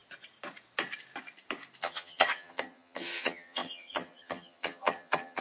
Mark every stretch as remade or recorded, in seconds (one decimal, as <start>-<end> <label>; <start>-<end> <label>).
0.0-1.8 recorded; 1.8-5.4 remade